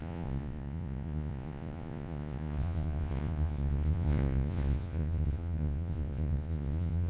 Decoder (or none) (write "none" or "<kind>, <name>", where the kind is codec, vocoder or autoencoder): vocoder, Vocos